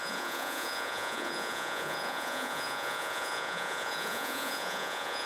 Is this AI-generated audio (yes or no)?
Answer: yes